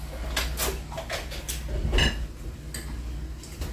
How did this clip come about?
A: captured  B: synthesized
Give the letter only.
A